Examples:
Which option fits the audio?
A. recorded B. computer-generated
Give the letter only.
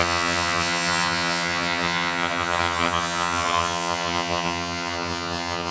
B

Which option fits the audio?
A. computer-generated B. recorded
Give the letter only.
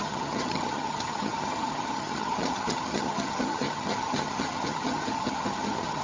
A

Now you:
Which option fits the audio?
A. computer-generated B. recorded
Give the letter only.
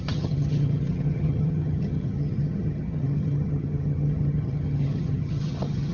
A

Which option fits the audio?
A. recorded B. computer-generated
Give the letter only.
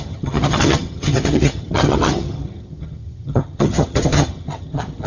B